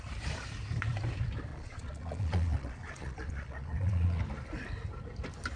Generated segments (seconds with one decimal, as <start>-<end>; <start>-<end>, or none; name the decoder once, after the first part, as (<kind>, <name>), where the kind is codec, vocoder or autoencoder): 1.5-4.2 (vocoder, Vocos)